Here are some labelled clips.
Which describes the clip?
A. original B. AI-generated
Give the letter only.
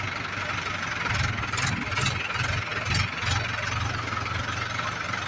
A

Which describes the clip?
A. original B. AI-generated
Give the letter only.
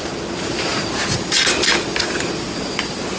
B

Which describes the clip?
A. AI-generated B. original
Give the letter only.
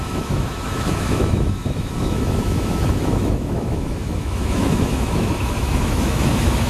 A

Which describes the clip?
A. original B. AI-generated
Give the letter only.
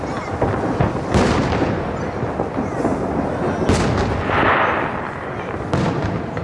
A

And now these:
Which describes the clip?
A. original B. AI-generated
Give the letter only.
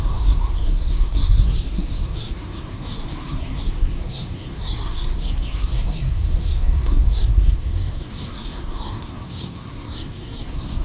B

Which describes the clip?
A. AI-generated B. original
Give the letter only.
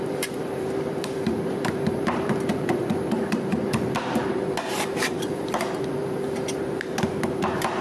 A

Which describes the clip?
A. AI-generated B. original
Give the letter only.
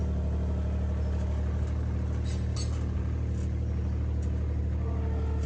B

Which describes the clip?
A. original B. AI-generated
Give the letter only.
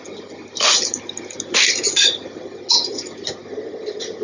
A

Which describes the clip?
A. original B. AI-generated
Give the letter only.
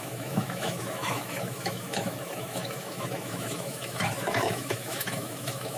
B